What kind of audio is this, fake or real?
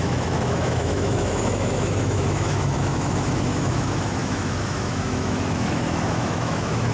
fake